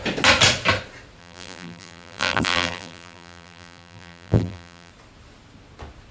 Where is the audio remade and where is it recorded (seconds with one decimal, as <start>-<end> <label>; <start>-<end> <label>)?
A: 0.0-1.2 recorded; 1.2-4.9 remade; 4.9-6.1 recorded